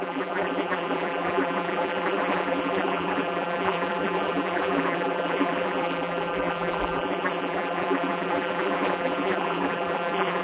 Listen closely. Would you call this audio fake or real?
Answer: fake